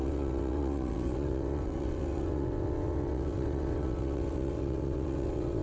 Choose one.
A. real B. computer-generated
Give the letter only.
B